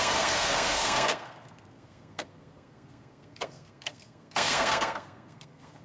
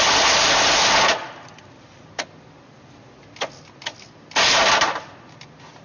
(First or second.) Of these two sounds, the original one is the second